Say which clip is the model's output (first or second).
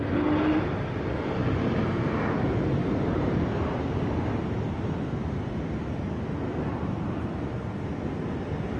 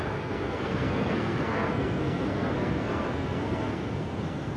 second